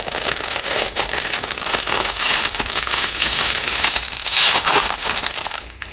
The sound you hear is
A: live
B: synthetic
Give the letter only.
B